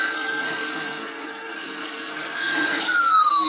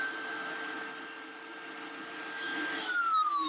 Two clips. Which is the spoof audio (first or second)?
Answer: first